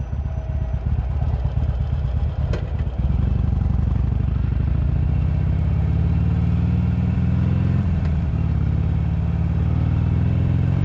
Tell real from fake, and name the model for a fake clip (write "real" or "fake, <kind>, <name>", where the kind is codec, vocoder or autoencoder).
real